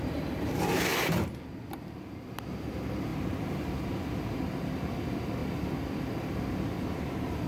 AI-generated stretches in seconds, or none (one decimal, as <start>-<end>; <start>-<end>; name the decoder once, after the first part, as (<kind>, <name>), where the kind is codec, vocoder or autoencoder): none